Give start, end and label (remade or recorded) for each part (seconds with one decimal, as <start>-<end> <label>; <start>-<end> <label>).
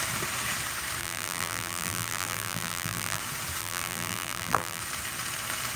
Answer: 0.0-1.0 recorded; 1.0-3.2 remade; 3.2-3.6 recorded; 3.6-4.8 remade; 4.8-5.8 recorded